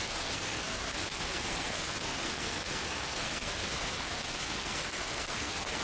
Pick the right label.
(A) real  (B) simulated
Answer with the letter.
B